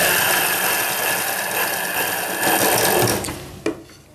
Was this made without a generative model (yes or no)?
yes